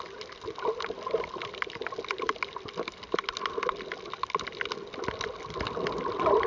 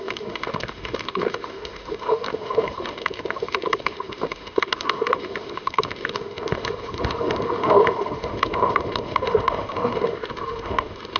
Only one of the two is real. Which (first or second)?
first